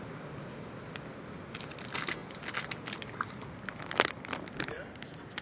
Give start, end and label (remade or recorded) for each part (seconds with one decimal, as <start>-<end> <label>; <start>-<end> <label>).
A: 0.0-5.4 recorded